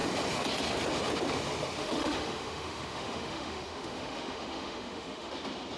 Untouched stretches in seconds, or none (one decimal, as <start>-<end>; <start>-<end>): 0.0-1.8; 5.3-5.8